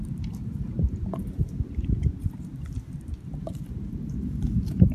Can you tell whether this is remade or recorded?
remade